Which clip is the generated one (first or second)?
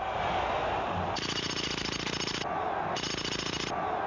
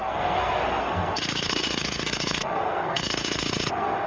second